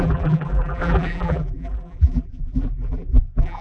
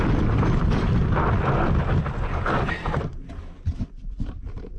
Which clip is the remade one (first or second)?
first